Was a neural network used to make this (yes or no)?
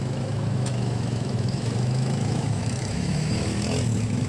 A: yes